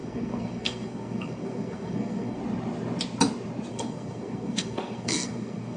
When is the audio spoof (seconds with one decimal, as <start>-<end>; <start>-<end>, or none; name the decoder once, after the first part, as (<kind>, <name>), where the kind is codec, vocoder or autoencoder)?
0.0-2.4 (codec, SNAC); 3.7-5.8